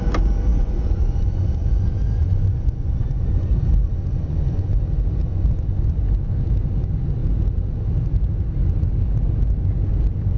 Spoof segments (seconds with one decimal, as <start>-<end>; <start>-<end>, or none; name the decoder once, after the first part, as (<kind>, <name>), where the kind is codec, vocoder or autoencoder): 0.5-4.8 (vocoder, Vocos); 5.2-6.0